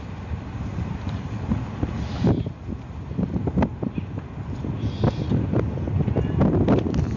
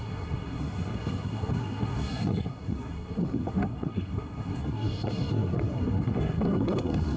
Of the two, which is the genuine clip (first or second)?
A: first